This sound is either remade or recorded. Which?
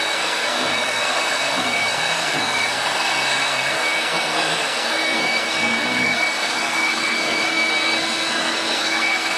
remade